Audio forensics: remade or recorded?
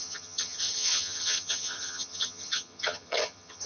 remade